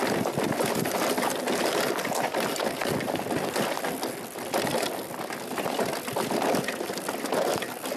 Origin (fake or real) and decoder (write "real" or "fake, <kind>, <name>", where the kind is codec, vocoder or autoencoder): real